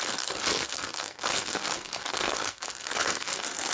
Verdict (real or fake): fake